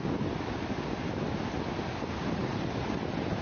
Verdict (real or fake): real